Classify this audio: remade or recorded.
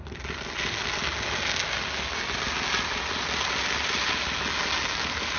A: recorded